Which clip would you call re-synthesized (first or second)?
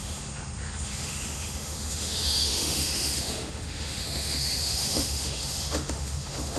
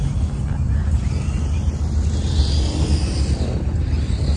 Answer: first